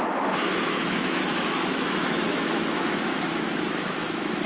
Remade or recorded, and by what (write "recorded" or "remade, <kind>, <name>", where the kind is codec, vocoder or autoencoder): remade, autoencoder, DAC-VAE